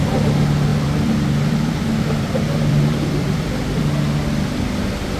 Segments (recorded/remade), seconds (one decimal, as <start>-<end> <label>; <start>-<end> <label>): 0.0-0.7 recorded; 0.7-3.8 remade; 3.8-5.2 recorded